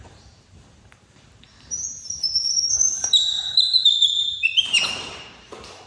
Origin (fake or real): fake